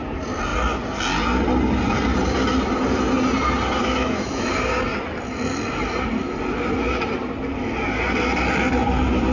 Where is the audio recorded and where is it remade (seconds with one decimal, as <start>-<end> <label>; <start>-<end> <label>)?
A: 0.0-3.8 recorded; 3.8-4.5 remade; 4.5-9.3 recorded